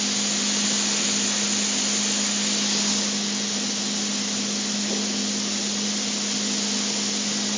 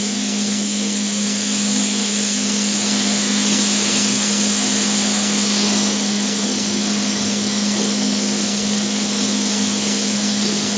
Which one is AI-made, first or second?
second